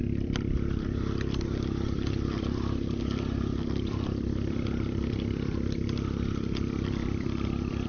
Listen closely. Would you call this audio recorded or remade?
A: remade